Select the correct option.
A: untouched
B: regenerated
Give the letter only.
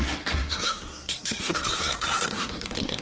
B